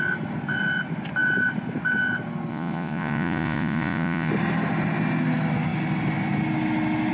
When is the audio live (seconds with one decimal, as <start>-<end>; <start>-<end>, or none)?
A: 0.0-2.5; 4.3-7.1